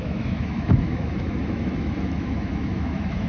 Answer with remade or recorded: remade